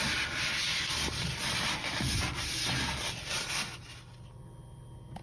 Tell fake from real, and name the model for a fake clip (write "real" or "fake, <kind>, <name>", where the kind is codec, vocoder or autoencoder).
real